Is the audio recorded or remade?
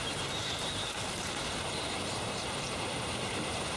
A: remade